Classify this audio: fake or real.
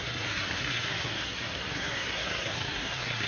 fake